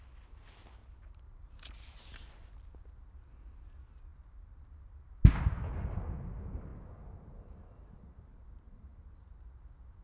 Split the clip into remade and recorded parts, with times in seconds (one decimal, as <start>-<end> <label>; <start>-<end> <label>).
0.0-0.8 recorded; 0.8-2.2 remade; 2.2-4.1 recorded; 4.1-5.1 remade; 5.1-8.3 recorded; 8.3-9.2 remade; 9.2-10.0 recorded